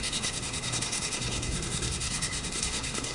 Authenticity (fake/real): fake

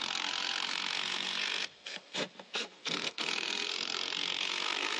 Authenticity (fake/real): fake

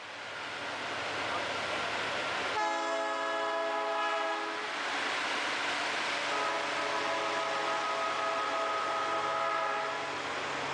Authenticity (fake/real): real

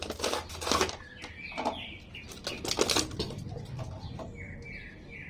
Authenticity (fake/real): real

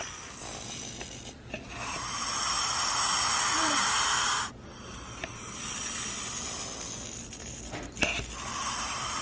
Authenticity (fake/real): real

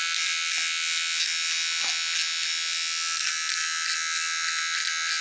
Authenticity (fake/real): real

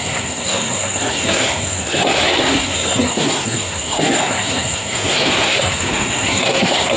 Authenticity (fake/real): fake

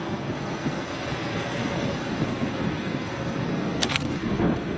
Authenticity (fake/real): fake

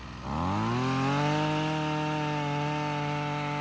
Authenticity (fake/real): real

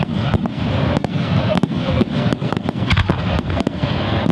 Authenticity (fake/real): fake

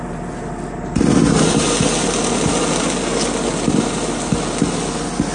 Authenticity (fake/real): real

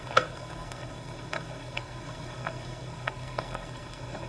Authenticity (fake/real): fake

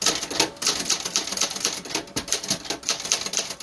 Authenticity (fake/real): real